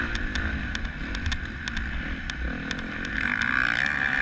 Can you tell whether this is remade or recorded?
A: recorded